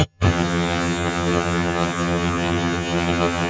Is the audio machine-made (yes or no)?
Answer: yes